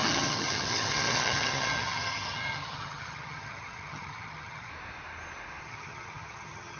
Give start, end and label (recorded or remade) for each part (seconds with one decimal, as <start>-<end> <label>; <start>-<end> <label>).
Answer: 0.0-4.7 remade; 4.7-5.6 recorded; 5.6-6.8 remade